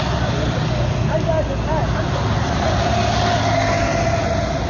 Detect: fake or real real